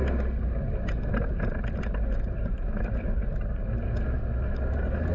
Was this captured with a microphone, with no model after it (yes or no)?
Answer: yes